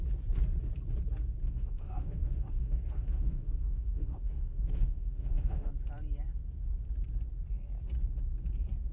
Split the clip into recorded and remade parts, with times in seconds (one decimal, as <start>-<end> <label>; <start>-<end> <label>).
0.0-1.4 recorded; 1.4-5.7 remade; 5.7-8.9 recorded